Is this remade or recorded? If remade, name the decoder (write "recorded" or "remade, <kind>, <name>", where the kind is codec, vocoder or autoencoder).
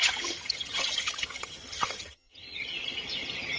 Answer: remade, vocoder, HiFi-GAN